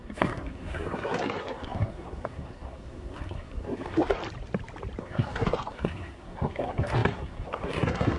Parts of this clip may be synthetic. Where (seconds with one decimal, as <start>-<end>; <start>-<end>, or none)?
0.0-4.2; 5.0-8.2